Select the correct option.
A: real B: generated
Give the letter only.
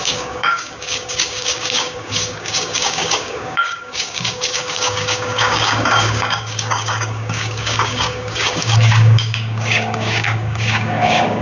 B